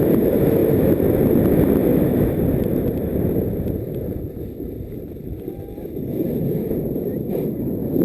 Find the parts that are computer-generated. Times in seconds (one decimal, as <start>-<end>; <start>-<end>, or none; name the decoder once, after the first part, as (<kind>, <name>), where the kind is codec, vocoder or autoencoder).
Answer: none